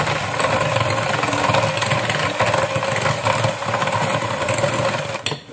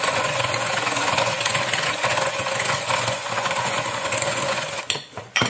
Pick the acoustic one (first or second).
first